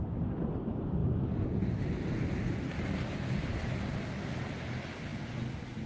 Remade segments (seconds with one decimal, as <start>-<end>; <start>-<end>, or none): none